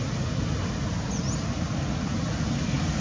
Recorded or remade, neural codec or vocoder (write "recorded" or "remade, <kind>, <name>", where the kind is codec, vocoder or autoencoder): recorded